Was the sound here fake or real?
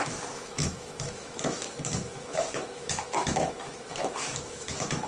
fake